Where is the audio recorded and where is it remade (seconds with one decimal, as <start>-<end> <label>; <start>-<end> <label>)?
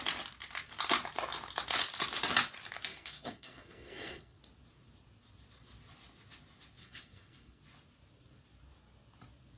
0.0-2.9 recorded; 2.9-4.4 remade; 4.4-6.8 recorded; 6.8-7.6 remade; 7.6-9.6 recorded